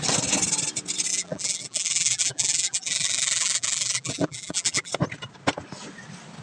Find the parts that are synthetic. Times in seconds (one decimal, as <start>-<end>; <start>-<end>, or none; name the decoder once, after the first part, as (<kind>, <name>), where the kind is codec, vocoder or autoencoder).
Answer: 1.1-4.9 (vocoder, BigVGAN v2)